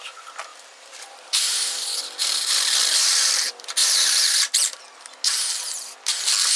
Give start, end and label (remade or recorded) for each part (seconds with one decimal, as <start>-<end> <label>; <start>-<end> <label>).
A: 0.0-0.5 recorded; 0.5-3.3 remade; 3.3-3.8 recorded; 3.8-4.4 remade; 4.4-6.6 recorded